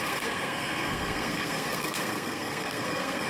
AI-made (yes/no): yes